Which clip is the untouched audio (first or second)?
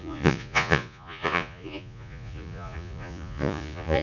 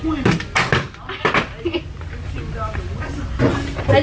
second